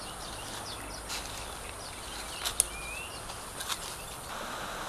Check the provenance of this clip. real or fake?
real